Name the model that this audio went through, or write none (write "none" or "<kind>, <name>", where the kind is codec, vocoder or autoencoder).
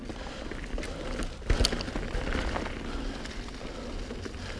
none